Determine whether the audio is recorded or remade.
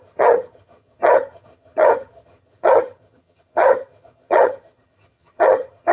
remade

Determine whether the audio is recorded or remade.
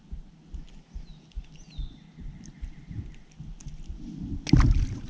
recorded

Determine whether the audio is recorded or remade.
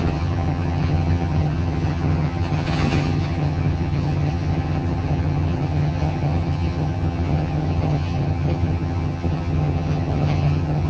remade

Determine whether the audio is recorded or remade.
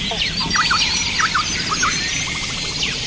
recorded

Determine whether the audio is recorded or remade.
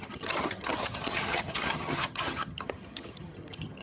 remade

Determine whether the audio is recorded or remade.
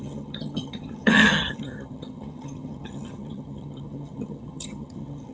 remade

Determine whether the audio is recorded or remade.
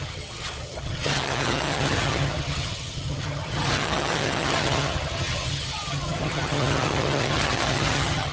remade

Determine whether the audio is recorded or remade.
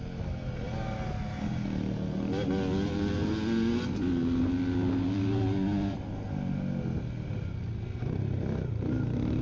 recorded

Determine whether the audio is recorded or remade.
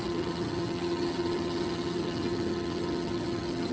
remade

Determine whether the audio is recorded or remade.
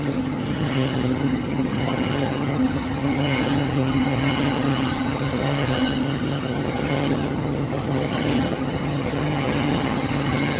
remade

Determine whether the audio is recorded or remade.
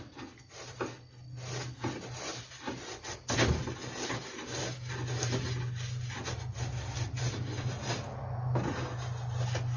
recorded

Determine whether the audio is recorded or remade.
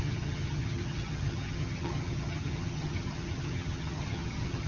remade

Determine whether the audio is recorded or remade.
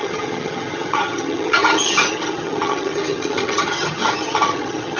remade